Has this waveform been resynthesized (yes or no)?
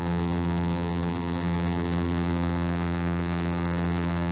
yes